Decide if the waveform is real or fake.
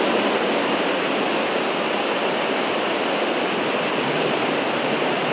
real